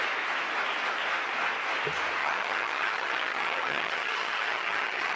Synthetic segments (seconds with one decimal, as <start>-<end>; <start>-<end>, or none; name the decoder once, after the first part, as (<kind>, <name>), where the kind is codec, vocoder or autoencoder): 2.2-5.2 (vocoder, HiFi-GAN)